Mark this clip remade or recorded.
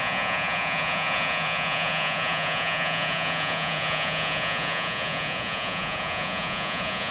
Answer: remade